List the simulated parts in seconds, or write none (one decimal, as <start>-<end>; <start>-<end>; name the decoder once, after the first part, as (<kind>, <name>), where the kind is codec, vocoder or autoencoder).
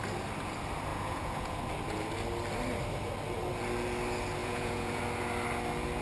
0.9-1.6 (vocoder, Vocos); 4.4-5.0